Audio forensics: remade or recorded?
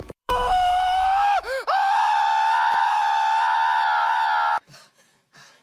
remade